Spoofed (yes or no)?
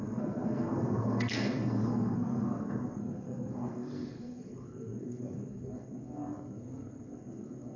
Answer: yes